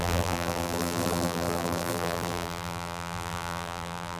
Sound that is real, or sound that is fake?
fake